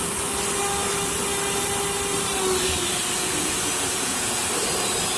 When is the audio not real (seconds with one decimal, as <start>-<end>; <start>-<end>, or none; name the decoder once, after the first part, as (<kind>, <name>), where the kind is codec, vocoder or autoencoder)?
3.2-4.5 (vocoder, Vocos)